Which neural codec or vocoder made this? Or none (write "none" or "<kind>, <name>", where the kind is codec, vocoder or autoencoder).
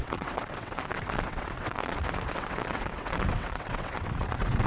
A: vocoder, WaveNeXt